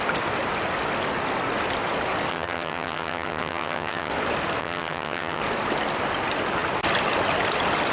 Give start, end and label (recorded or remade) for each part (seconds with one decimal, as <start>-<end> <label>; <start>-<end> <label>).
0.0-2.3 recorded; 2.3-4.1 remade; 4.1-4.6 recorded; 4.6-5.4 remade; 5.4-7.9 recorded